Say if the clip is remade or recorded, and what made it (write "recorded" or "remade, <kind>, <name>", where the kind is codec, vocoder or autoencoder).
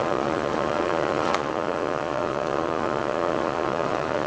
remade, vocoder, Vocos